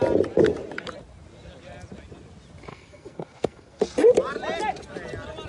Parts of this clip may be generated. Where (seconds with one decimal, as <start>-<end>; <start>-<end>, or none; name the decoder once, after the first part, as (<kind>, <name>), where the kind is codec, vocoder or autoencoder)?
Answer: 2.7-3.8 (codec, SNAC)